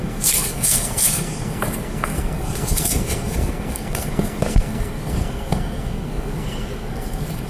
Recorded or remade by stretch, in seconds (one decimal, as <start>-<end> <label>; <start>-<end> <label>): 0.0-7.5 remade